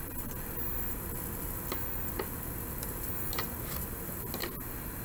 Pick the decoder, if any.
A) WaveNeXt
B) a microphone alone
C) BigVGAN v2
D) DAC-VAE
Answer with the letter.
B